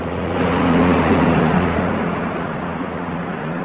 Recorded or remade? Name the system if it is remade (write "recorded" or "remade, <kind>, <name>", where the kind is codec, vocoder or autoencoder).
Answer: remade, vocoder, Vocos